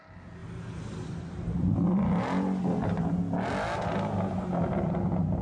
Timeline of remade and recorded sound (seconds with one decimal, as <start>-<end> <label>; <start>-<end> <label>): 0.0-5.4 recorded